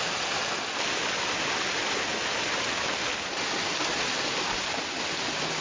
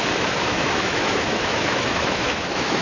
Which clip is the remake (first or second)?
second